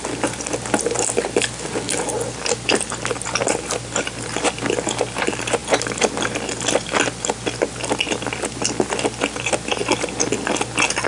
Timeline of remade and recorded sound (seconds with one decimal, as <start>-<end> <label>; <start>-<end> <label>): 0.0-11.1 recorded